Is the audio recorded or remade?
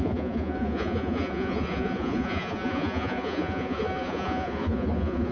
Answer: remade